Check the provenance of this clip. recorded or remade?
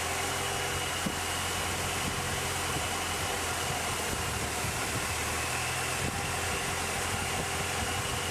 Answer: recorded